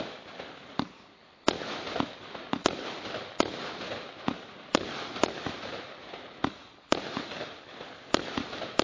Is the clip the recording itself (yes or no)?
no